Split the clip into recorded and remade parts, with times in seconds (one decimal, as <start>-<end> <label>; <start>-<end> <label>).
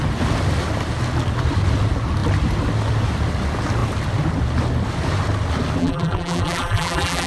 0.0-5.8 recorded; 5.8-7.3 remade